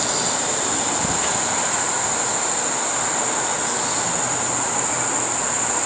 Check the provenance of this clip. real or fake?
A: real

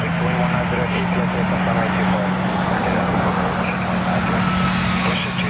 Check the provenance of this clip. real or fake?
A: real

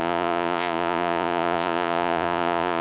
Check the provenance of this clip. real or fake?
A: fake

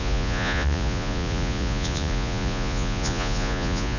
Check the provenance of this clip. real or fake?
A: fake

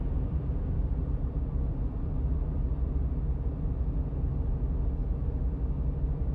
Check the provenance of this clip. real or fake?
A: real